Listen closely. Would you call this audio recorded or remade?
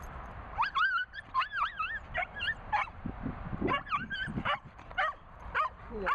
remade